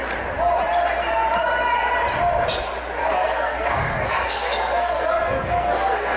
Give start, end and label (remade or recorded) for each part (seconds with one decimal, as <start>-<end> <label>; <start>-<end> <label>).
0.0-3.0 recorded; 3.0-6.2 remade